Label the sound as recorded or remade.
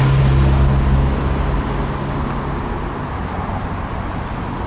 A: recorded